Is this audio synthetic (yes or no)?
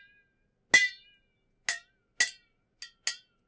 no